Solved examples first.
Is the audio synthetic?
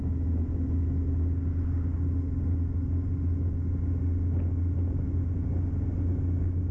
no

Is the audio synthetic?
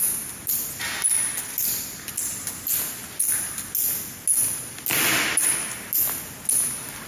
no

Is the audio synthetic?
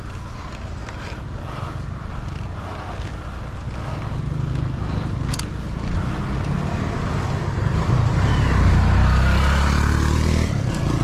no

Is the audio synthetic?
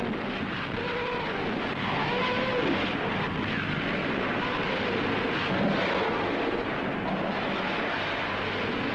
no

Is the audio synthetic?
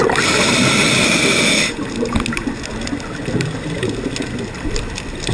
no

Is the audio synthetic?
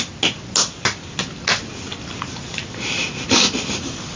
no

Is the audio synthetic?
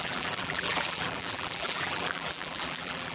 yes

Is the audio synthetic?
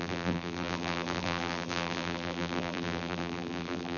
yes